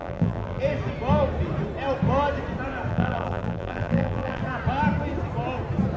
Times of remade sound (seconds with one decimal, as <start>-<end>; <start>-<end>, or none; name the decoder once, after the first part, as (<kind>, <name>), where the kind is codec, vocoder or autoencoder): 0.0-0.6 (vocoder, BigVGAN v2); 2.9-4.4